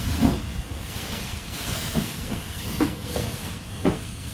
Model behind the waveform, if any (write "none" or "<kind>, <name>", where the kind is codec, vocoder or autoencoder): codec, SNAC